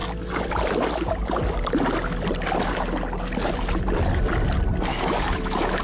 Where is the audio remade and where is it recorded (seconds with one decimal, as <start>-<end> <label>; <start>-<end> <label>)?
0.0-4.9 recorded; 4.9-5.8 remade